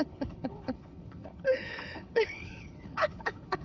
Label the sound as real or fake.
fake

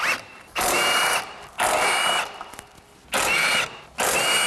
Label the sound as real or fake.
real